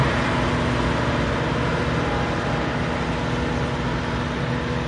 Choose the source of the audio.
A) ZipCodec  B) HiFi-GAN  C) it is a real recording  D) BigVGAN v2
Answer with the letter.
C